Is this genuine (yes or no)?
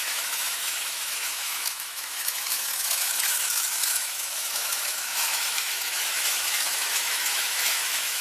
no